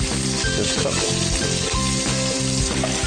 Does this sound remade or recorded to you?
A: recorded